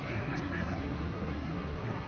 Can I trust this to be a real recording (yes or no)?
no